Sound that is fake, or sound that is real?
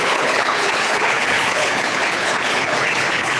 fake